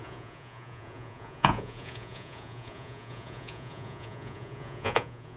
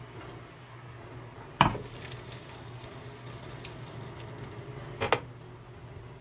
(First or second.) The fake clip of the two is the first